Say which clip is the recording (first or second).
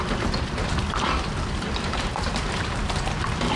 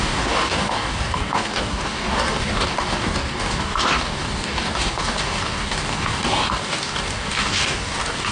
first